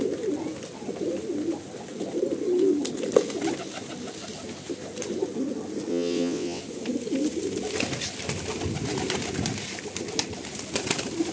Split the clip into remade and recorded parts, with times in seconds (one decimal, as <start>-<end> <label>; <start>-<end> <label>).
0.0-5.9 recorded; 5.9-6.6 remade; 6.6-11.3 recorded